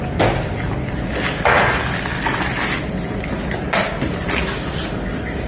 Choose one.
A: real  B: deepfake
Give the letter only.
A